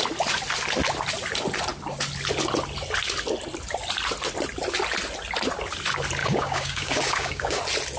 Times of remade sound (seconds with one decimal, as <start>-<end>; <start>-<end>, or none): 6.2-7.6